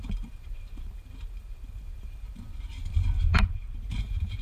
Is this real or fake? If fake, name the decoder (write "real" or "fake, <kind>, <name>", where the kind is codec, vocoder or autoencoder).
fake, vocoder, BigVGAN v2